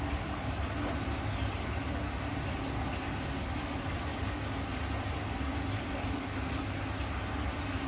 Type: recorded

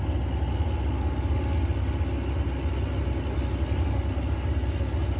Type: recorded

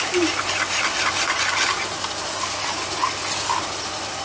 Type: recorded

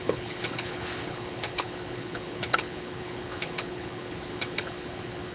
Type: remade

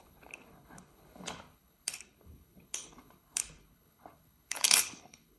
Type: remade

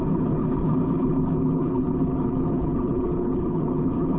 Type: remade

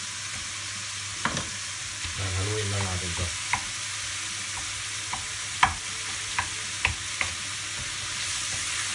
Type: recorded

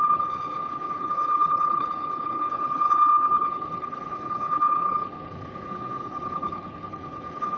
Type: remade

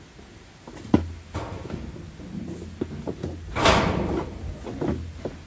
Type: recorded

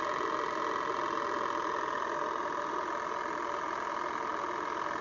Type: recorded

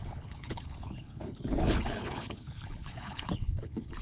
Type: remade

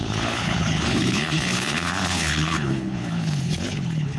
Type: remade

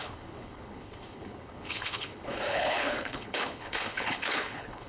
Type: remade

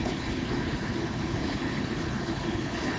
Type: remade